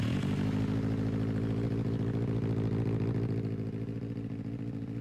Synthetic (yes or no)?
no